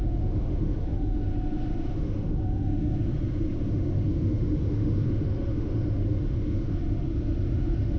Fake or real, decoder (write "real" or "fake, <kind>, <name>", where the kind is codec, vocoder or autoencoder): fake, autoencoder, DAC-VAE